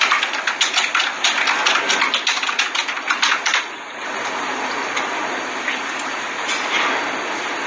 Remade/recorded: recorded